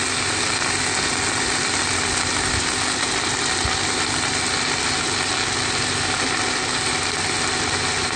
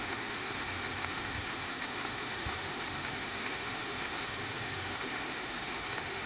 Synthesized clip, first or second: second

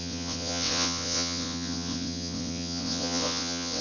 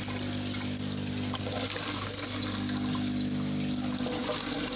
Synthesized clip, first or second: first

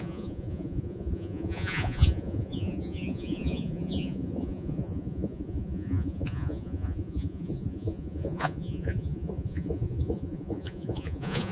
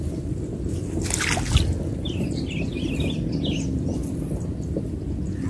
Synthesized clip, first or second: first